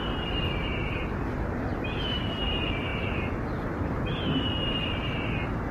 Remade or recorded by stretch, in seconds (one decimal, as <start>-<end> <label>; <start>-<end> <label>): 0.0-1.7 recorded; 1.7-2.2 remade; 2.2-5.7 recorded